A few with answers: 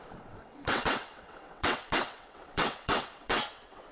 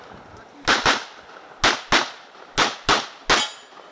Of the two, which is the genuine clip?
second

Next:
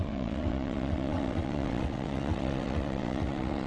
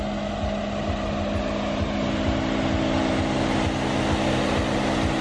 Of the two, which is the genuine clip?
second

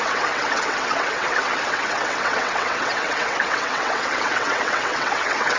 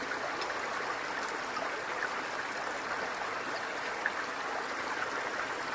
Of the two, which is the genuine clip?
second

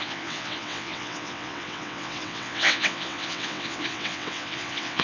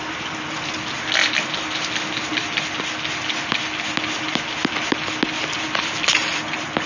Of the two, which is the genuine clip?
second